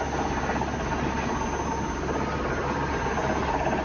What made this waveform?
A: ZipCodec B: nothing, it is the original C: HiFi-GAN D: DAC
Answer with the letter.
B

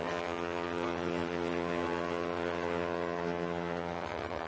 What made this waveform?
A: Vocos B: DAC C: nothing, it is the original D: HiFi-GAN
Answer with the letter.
D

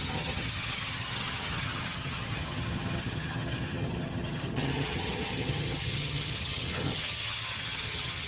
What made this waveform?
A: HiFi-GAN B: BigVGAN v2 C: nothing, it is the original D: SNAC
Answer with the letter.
A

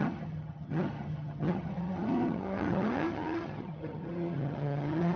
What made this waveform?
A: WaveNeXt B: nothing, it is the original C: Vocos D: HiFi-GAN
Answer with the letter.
D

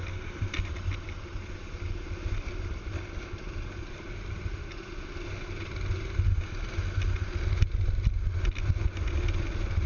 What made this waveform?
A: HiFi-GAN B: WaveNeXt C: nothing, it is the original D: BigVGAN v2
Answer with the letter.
C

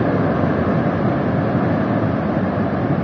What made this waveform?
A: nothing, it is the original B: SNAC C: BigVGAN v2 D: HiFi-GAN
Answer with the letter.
A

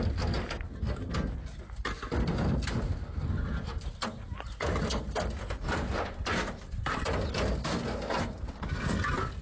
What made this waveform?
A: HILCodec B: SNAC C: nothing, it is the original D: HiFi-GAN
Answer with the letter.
C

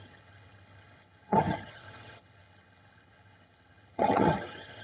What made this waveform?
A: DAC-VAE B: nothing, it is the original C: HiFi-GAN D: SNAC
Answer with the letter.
C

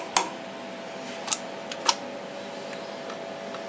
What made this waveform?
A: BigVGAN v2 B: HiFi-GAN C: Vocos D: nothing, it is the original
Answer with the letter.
D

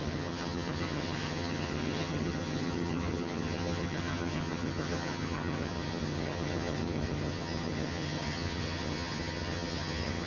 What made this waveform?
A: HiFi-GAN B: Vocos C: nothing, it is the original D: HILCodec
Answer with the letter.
A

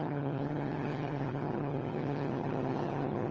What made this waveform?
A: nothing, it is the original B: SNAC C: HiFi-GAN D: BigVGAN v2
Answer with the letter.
C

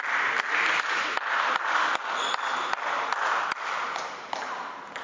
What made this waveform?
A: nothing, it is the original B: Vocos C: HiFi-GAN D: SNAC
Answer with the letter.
A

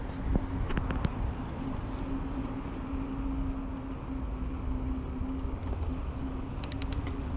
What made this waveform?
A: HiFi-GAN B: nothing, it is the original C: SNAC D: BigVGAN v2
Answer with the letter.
B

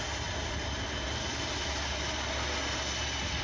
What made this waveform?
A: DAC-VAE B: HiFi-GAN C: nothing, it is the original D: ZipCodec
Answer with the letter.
C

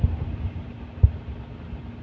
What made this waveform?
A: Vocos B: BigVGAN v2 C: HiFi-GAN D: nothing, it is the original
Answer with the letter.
D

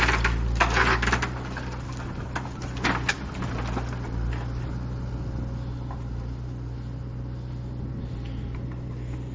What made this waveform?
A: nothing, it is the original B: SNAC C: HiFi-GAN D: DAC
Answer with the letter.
A